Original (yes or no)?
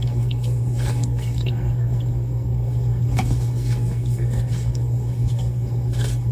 no